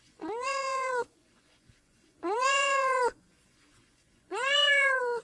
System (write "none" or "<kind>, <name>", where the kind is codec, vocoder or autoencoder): vocoder, Vocos